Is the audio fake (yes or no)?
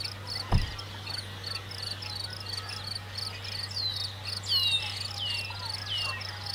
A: no